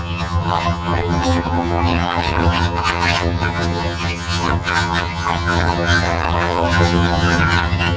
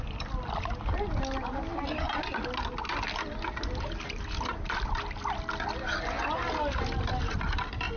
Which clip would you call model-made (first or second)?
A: first